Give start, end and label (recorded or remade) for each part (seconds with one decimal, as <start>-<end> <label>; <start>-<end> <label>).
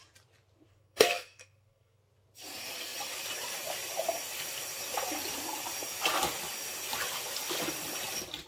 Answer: 0.0-0.7 recorded; 0.7-2.0 remade; 2.0-8.5 recorded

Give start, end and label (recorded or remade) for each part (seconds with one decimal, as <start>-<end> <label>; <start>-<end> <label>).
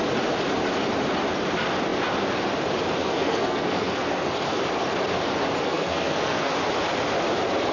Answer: 0.0-3.0 recorded; 3.0-4.3 remade; 4.3-5.6 recorded; 5.6-6.5 remade; 6.5-7.7 recorded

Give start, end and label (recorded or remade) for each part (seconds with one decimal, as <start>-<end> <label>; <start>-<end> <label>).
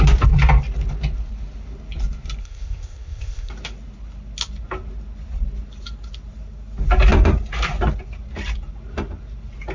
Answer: 0.0-2.4 recorded; 2.4-3.5 remade; 3.5-9.7 recorded